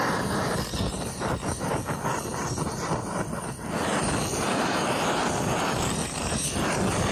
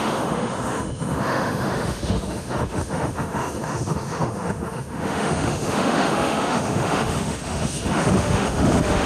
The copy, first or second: second